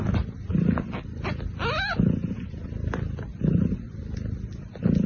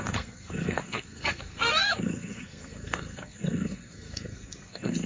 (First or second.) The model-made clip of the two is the second